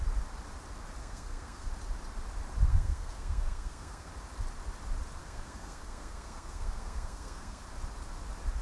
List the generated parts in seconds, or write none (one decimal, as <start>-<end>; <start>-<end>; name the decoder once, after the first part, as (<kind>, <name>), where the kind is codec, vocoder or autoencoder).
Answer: 1.0-1.7 (codec, SNAC); 2.7-4.1; 5.2-7.6